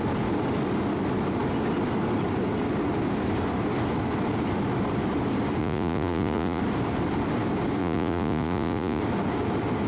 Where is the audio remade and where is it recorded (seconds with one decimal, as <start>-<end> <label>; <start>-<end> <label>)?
0.0-5.6 recorded; 5.6-6.6 remade; 6.6-7.8 recorded; 7.8-9.0 remade; 9.0-9.9 recorded